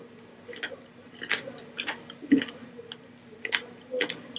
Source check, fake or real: real